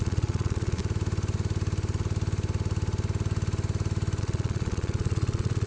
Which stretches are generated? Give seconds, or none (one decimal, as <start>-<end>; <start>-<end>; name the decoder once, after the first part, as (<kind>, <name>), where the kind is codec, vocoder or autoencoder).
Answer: 0.0-0.8 (vocoder, Vocos); 4.2-5.7